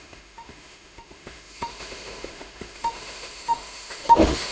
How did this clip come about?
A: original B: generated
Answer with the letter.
B